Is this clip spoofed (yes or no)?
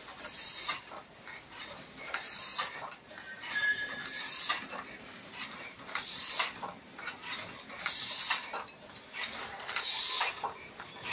yes